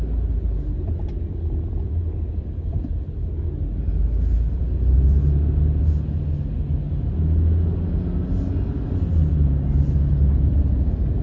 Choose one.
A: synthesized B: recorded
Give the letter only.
B